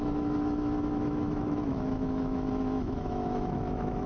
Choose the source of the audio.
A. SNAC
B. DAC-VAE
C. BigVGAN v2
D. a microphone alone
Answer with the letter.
B